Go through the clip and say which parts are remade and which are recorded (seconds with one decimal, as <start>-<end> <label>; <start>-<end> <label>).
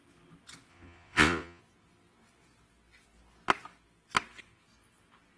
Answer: 0.0-0.7 recorded; 0.7-1.6 remade; 1.6-5.4 recorded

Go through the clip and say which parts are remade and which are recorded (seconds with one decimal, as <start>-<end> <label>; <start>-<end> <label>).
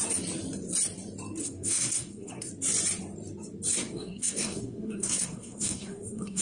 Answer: 0.0-1.4 recorded; 1.4-2.5 remade; 2.5-3.7 recorded; 3.7-6.4 remade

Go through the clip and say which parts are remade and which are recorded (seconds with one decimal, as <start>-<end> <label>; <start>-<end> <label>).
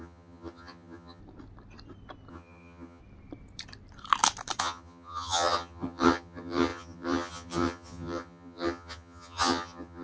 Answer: 0.0-1.2 remade; 1.2-2.3 recorded; 2.3-3.0 remade; 3.0-4.6 recorded; 4.6-10.0 remade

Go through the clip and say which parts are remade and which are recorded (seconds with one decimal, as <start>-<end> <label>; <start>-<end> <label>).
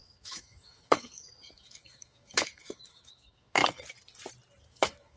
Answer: 0.0-3.6 remade; 3.6-4.7 recorded; 4.7-5.2 remade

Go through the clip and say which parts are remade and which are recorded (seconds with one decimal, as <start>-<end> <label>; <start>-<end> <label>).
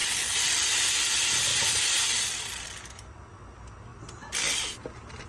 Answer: 0.0-5.3 recorded